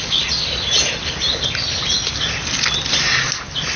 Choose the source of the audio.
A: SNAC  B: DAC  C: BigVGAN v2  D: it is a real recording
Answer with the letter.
D